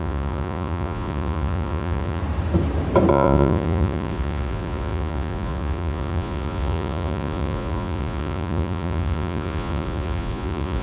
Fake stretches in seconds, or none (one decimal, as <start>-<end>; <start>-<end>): 0.0-2.2; 3.1-10.8